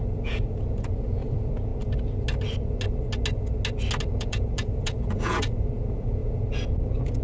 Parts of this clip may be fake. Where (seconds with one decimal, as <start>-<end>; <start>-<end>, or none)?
0.0-1.7; 4.1-7.2